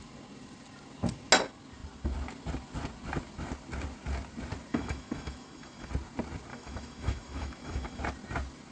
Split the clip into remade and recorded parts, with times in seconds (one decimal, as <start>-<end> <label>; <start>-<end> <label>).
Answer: 0.0-4.7 recorded; 4.7-5.9 remade; 5.9-6.5 recorded; 6.5-8.0 remade; 8.0-8.7 recorded